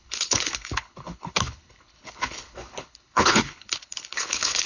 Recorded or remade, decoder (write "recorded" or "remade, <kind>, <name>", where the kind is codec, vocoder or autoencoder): remade, codec, HILCodec